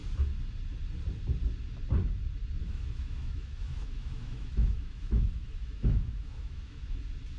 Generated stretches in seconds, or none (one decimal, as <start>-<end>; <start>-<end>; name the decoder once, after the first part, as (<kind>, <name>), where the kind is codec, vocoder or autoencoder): 2.6-7.0 (autoencoder, DAC-VAE)

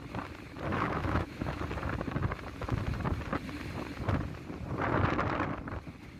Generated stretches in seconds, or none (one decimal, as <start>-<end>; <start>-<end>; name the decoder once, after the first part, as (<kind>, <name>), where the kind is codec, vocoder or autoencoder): 0.7-1.6 (autoencoder, DAC-VAE)

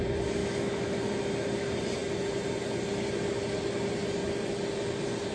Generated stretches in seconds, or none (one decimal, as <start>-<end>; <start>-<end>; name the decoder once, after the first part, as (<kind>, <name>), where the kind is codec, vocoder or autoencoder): 0.4-1.0 (autoencoder, DAC-VAE)

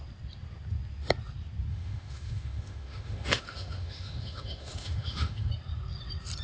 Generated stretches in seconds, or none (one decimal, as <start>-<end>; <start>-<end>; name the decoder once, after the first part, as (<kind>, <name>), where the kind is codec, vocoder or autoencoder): 1.7-5.5 (autoencoder, DAC-VAE)

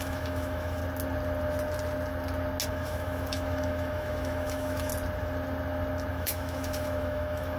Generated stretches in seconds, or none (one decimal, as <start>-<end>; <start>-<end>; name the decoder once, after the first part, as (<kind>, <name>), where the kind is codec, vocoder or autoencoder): 0.0-0.8 (autoencoder, DAC-VAE); 2.7-4.9; 6.1-7.6